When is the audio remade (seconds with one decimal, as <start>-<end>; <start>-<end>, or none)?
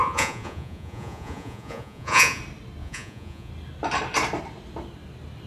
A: 0.0-2.4; 2.8-3.5